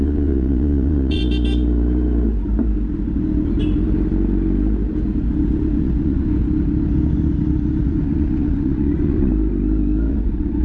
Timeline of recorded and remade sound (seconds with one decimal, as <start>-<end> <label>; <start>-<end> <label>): 0.0-1.2 remade; 1.2-5.8 recorded; 5.8-6.4 remade; 6.4-7.9 recorded; 7.9-9.3 remade; 9.3-10.1 recorded; 10.1-10.6 remade